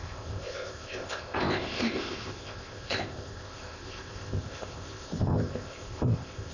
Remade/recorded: remade